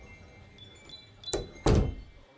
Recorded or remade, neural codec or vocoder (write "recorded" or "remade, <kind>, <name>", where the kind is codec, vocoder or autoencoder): recorded